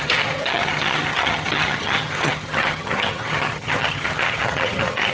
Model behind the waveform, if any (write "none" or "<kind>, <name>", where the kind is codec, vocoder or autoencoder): vocoder, HiFi-GAN